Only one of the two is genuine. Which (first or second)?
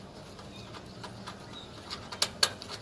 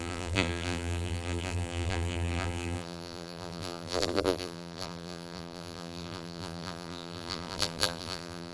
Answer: first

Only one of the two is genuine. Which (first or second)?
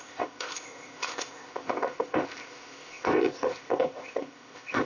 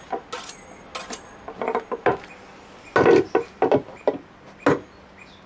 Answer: second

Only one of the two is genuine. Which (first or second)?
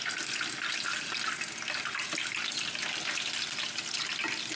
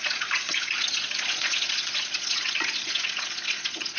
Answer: first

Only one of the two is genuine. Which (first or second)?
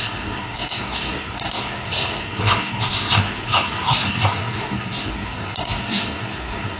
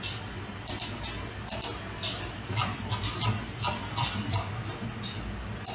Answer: second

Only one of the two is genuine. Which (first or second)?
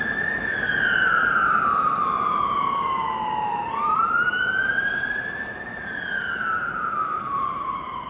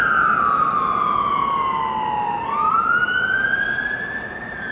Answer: second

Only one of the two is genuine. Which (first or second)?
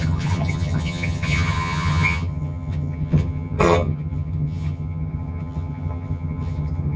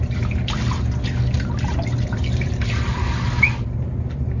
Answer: second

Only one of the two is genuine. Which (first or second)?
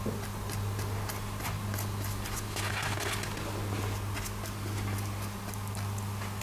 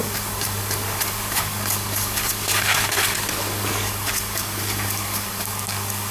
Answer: first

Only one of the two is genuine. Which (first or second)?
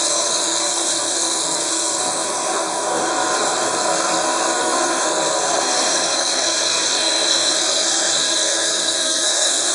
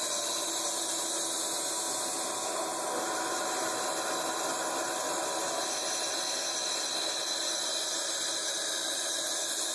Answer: second